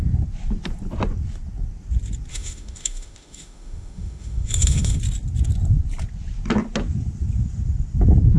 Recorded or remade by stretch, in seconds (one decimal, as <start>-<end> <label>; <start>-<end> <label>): 0.0-2.3 recorded; 2.3-5.0 remade; 5.0-8.4 recorded